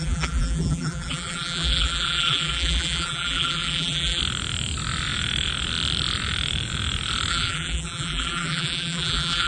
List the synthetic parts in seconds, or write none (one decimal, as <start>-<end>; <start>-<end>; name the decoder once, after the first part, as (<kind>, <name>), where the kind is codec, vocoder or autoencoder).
0.0-4.2 (vocoder, BigVGAN v2); 7.3-9.5